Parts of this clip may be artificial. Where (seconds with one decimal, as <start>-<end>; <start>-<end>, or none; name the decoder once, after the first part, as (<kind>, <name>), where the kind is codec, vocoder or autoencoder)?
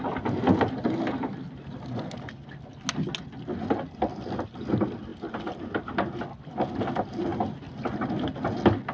none